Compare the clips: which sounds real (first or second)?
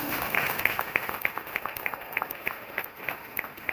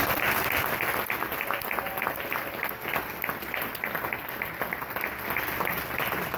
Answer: second